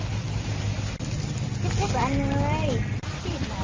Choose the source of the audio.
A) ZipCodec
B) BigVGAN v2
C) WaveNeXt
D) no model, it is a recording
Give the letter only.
D